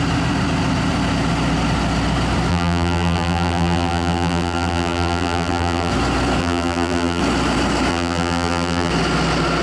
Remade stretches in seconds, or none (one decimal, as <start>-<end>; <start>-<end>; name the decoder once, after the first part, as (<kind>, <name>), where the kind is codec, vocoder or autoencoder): 2.5-5.9 (vocoder, BigVGAN v2); 6.4-7.2; 7.9-8.9